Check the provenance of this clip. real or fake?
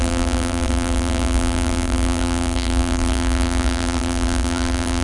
fake